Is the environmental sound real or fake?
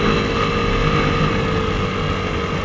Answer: real